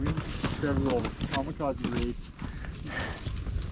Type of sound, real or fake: real